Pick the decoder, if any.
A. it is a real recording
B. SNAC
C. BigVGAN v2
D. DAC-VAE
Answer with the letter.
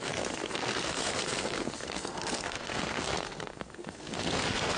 B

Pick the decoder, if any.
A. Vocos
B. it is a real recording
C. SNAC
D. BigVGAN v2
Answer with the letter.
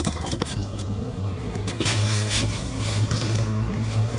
C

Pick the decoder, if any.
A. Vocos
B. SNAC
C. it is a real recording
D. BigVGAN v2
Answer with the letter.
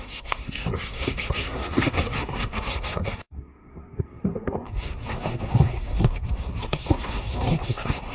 B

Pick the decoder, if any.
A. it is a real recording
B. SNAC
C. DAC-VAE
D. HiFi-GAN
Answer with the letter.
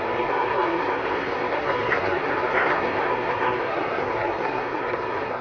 B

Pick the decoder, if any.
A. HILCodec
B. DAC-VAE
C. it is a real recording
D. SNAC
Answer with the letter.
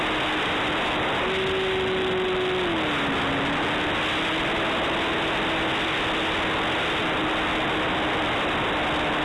C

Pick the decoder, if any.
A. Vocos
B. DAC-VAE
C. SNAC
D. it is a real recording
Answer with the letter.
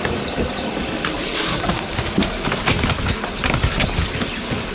D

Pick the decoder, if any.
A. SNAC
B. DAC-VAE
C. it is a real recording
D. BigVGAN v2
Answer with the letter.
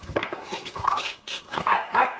A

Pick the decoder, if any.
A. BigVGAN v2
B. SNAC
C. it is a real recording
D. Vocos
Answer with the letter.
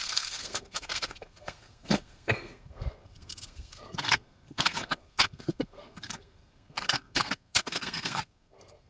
B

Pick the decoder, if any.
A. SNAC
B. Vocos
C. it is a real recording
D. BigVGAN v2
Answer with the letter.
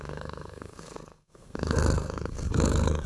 A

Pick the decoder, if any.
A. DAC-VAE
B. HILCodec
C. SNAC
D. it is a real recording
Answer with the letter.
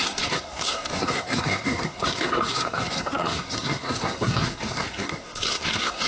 C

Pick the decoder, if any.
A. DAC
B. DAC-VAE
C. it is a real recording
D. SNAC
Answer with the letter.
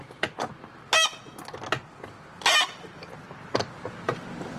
C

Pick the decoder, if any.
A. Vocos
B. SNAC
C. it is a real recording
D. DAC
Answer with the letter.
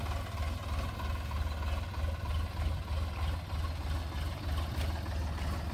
C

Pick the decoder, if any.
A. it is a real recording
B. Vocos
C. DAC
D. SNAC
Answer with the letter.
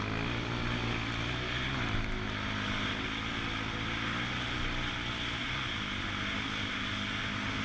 A